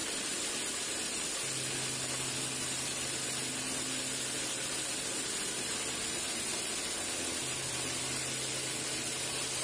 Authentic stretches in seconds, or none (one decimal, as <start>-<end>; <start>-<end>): 0.0-9.6